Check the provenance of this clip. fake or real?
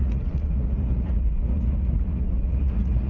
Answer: fake